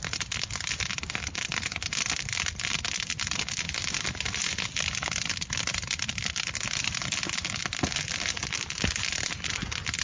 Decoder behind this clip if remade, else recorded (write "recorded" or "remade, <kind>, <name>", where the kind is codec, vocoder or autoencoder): recorded